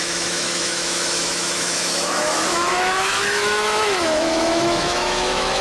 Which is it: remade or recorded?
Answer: remade